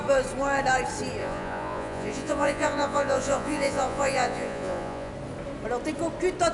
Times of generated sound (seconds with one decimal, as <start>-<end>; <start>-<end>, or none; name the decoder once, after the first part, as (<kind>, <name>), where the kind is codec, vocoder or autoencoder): 1.2-5.1 (vocoder, Vocos)